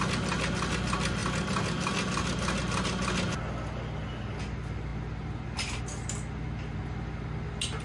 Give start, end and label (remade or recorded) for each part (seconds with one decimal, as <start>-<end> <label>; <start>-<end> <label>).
0.0-7.8 recorded